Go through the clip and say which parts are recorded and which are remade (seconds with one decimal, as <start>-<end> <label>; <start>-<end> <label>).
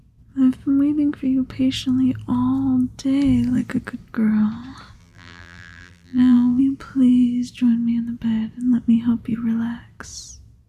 0.0-5.0 recorded; 5.0-6.6 remade; 6.6-10.7 recorded